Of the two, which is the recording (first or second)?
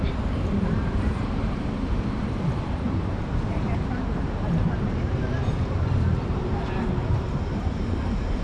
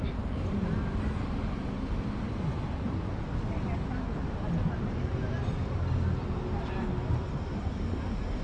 second